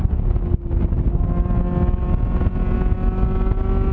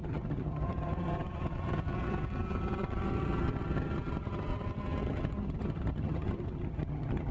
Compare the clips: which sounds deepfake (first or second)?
second